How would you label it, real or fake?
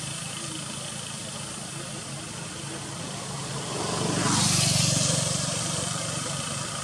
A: real